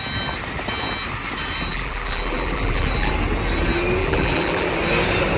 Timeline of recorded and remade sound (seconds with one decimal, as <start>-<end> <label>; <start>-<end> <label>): 0.0-1.7 recorded; 1.7-3.1 remade; 3.1-4.0 recorded; 4.0-4.7 remade; 4.7-5.4 recorded